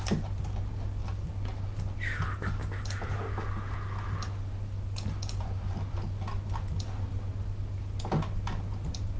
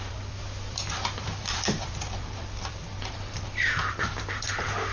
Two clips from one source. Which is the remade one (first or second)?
second